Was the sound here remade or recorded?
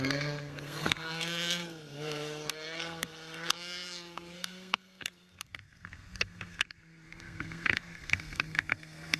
remade